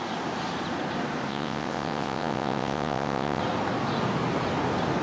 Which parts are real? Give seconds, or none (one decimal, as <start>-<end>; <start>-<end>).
0.0-1.3; 3.4-5.0